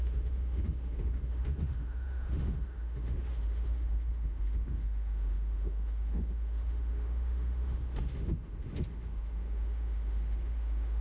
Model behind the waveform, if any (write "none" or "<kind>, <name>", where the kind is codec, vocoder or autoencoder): autoencoder, DAC-VAE